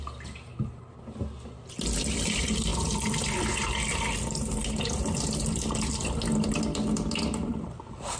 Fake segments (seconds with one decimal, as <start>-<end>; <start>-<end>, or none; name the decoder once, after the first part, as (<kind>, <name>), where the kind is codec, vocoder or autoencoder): 7.4-8.2 (vocoder, BigVGAN v2)